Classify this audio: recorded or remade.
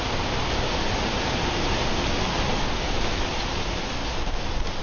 recorded